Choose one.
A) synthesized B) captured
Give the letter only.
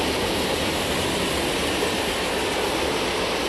B